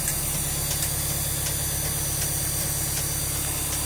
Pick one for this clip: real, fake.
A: real